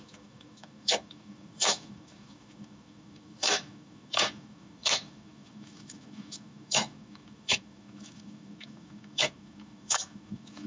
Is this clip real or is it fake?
fake